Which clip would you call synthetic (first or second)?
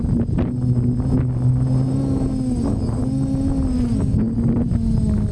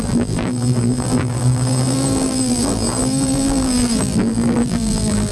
second